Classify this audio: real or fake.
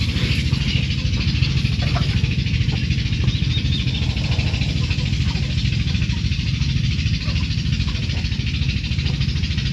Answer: real